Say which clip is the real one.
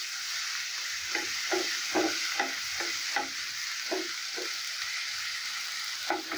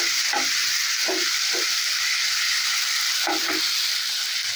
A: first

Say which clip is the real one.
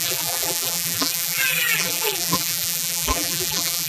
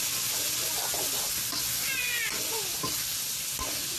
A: second